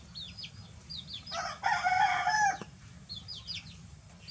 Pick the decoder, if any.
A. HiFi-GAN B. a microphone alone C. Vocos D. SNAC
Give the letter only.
B